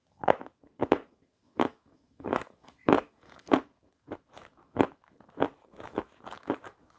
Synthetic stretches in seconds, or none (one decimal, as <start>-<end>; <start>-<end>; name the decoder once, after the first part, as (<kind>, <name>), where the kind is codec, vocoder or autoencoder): 0.0-7.0 (autoencoder, DAC-VAE)